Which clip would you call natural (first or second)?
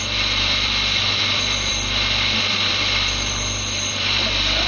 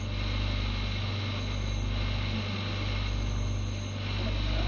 second